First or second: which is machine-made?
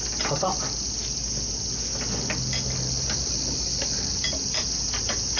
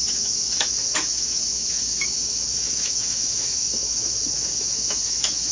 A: second